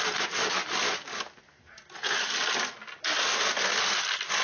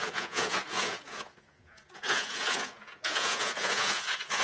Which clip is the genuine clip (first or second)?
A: first